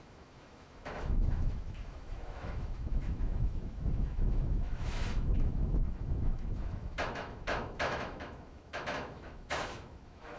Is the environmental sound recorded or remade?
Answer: remade